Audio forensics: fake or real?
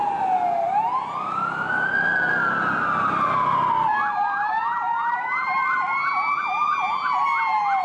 real